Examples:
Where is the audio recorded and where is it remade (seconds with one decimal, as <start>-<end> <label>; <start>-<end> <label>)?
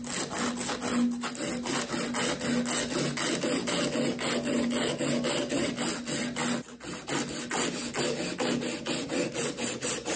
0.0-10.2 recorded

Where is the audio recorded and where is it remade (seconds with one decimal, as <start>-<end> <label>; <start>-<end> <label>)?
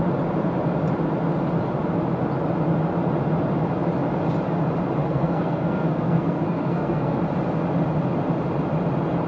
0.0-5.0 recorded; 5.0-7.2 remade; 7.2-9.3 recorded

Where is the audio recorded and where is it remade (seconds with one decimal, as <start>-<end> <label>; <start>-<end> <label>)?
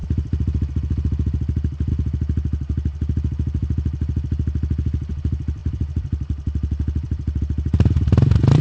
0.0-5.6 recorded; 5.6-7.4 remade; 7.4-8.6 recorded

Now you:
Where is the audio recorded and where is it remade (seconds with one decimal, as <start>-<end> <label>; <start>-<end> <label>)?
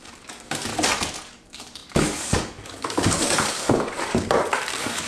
0.0-0.7 remade; 0.7-1.3 recorded; 1.3-5.1 remade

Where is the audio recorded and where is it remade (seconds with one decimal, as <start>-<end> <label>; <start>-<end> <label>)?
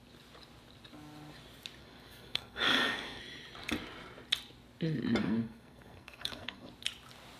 0.0-1.8 recorded; 1.8-3.2 remade; 3.2-5.2 recorded; 5.2-6.7 remade; 6.7-7.4 recorded